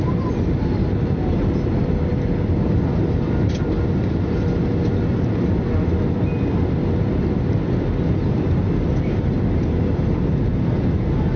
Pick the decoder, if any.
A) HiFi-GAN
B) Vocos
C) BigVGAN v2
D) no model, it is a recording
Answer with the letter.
D